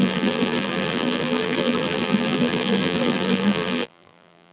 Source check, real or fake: fake